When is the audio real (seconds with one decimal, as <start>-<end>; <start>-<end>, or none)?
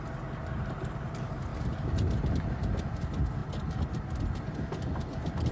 0.0-5.5